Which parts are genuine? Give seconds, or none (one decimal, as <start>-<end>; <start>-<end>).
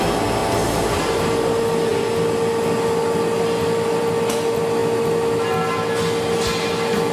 0.0-7.1